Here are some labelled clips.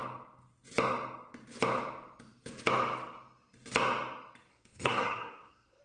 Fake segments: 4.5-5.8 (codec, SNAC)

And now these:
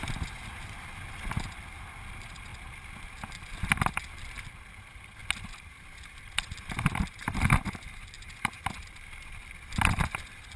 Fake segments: none

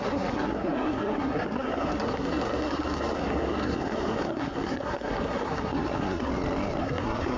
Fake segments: 0.0-6.3 (codec, SNAC); 6.8-7.4